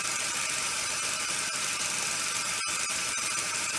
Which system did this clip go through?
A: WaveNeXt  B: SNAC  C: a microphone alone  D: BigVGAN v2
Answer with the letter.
D